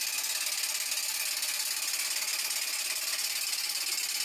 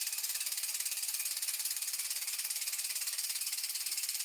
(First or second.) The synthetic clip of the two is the second